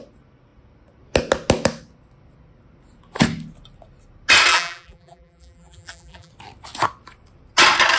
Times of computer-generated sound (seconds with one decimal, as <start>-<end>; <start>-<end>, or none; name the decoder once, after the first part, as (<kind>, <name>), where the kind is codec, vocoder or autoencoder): 4.5-6.3 (vocoder, BigVGAN v2)